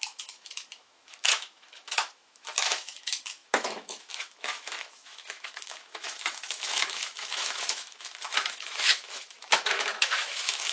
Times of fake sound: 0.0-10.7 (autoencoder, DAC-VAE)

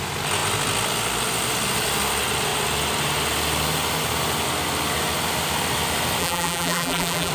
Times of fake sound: 6.2-7.3 (vocoder, BigVGAN v2)